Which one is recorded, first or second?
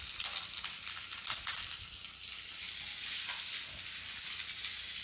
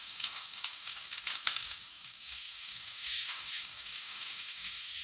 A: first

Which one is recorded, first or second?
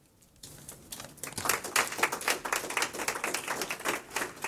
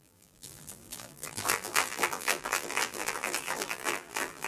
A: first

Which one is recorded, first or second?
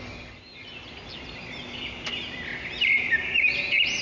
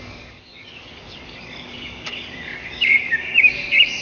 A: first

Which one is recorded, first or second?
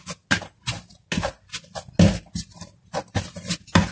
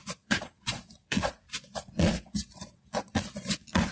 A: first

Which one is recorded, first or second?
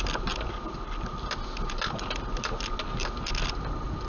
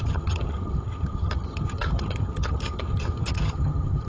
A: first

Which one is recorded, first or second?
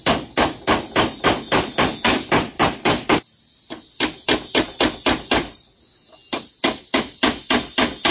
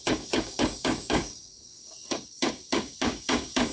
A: first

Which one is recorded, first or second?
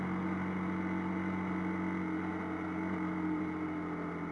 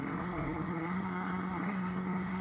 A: first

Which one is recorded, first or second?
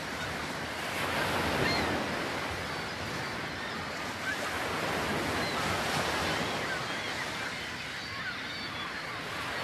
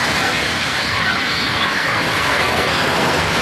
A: first